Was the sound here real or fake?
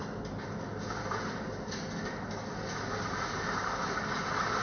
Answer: real